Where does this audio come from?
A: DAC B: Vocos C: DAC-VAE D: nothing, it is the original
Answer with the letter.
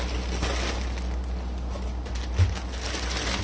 D